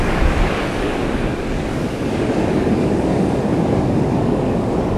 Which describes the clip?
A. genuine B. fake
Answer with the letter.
B